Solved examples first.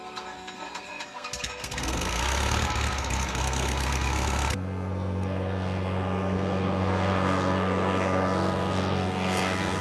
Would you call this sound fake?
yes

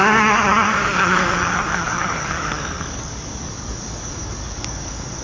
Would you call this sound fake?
yes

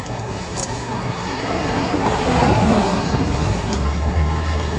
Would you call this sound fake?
yes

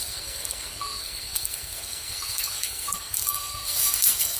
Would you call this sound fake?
yes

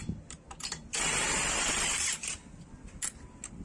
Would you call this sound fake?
no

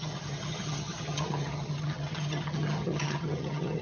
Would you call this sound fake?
yes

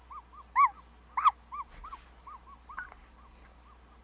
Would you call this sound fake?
no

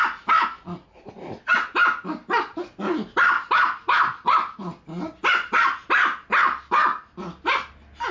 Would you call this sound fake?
no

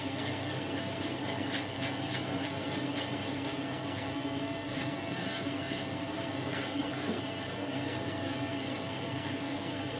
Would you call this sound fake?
yes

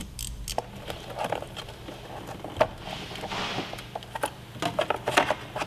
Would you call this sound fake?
no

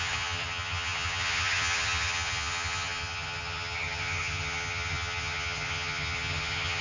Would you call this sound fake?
yes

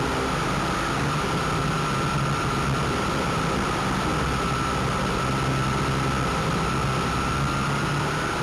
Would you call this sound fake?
no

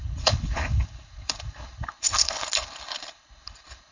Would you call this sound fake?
yes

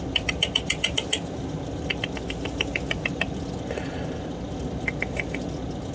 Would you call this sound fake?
no